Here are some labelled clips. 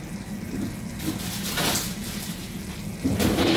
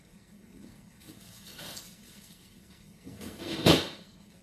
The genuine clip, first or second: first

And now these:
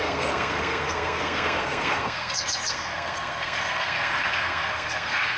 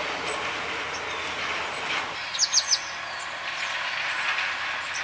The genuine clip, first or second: second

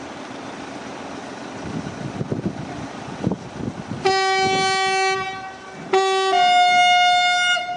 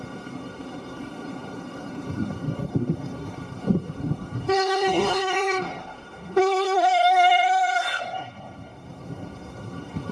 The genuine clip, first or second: first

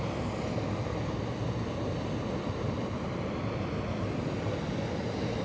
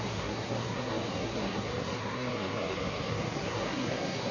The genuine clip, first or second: first